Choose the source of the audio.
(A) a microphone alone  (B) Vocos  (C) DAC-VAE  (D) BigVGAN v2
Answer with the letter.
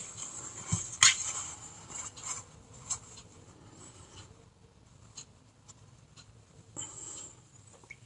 A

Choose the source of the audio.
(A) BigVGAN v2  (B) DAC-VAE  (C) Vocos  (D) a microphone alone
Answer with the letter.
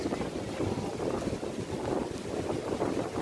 D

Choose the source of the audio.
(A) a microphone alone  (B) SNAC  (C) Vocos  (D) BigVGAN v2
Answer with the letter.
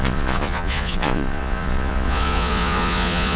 C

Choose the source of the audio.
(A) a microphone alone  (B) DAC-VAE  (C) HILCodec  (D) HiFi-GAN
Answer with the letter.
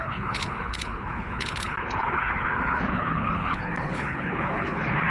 C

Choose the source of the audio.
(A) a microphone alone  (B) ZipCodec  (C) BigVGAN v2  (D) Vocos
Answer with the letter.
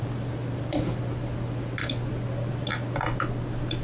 A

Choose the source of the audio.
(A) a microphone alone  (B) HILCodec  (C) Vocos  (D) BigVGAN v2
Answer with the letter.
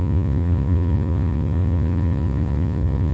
C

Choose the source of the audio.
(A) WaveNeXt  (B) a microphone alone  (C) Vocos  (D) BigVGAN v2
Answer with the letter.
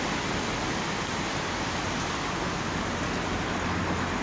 B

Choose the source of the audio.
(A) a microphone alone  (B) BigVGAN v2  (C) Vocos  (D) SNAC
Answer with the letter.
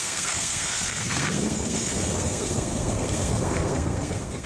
D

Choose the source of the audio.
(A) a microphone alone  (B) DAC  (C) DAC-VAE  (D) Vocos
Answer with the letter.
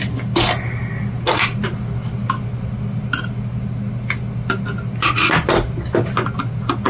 A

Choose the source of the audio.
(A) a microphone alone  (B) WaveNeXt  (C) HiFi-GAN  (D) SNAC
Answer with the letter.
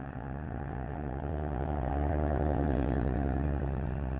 B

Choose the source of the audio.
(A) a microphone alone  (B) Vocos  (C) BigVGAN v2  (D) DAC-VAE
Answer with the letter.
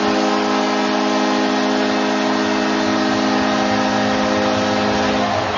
A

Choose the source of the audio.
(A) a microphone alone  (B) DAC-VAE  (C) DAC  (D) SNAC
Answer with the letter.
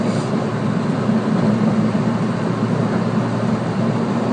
A